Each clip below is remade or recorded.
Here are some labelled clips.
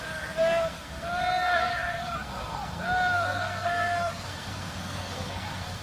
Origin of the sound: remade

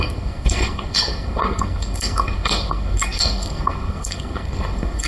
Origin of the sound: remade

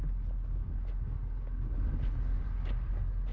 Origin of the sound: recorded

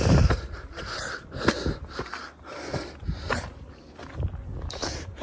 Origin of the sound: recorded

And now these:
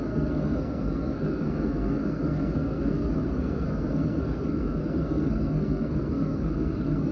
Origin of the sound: remade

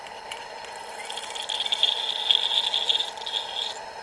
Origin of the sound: recorded